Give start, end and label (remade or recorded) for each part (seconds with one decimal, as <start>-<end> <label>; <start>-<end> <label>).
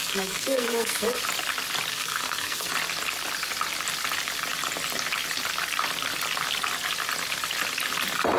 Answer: 0.0-1.2 remade; 1.2-1.9 recorded; 1.9-2.7 remade; 2.7-8.4 recorded